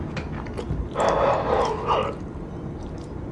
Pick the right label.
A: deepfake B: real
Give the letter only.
B